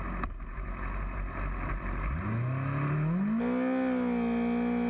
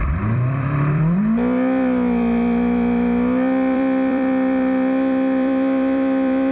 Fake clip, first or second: second